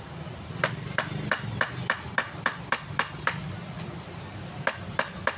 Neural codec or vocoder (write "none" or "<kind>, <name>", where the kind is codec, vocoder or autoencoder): none